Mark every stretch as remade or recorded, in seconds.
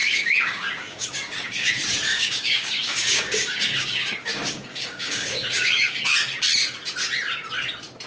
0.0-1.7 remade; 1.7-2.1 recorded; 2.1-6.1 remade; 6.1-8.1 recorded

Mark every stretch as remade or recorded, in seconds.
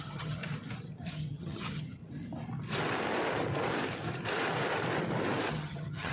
0.0-0.4 remade; 0.4-1.1 recorded; 1.1-2.0 remade; 2.0-5.5 recorded; 5.5-6.1 remade